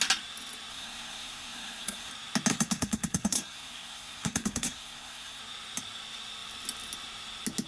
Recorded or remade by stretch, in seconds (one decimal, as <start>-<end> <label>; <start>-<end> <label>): 0.0-0.7 recorded; 0.7-2.1 remade; 2.1-2.5 recorded; 2.5-5.4 remade; 5.4-7.7 recorded